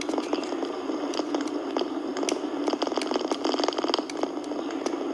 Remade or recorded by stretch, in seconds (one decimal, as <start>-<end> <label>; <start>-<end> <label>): 0.0-5.1 recorded